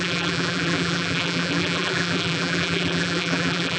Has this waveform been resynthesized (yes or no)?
yes